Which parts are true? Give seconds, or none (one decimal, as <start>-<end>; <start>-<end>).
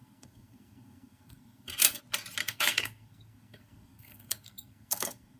2.0-2.4